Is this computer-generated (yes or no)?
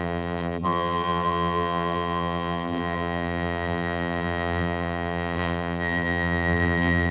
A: yes